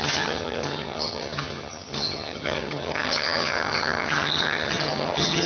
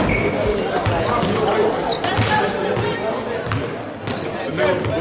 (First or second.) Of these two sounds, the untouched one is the second